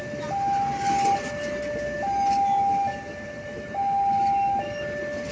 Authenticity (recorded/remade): recorded